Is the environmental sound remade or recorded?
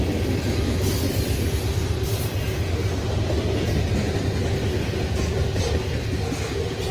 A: recorded